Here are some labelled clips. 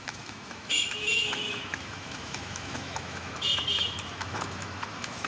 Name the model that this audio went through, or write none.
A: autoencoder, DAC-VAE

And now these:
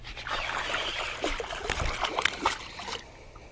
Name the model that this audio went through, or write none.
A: none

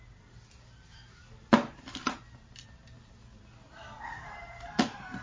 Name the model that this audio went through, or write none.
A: none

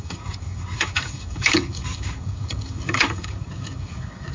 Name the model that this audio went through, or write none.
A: codec, DAC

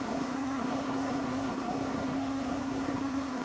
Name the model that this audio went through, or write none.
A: codec, SNAC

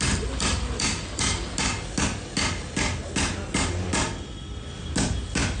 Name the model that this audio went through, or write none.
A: none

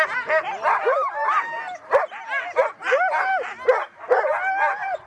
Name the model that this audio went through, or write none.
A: none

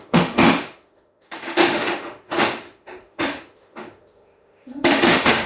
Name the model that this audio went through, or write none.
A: autoencoder, DAC-VAE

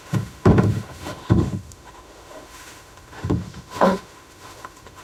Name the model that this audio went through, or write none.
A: autoencoder, DAC-VAE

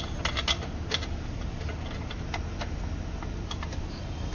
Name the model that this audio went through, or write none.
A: none